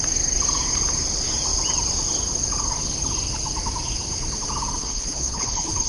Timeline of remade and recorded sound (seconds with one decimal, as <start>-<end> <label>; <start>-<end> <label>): 0.0-4.8 recorded; 4.8-5.9 remade